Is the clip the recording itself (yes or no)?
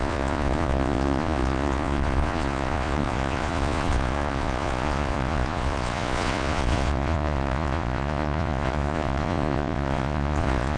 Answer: no